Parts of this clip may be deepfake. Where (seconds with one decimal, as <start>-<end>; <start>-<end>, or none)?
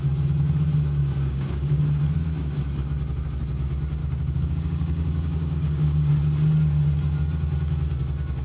1.0-1.8; 4.0-6.1